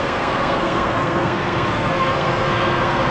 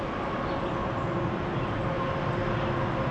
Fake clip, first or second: first